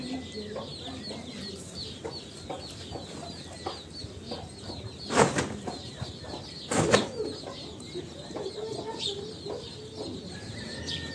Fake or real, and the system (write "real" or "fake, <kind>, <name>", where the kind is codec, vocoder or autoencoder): real